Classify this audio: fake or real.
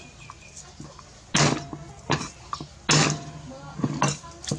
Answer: real